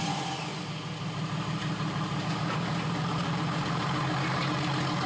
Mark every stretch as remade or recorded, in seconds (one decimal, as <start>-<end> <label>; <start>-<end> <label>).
0.0-1.6 recorded; 1.6-2.3 remade; 2.3-3.2 recorded; 3.2-4.6 remade; 4.6-5.1 recorded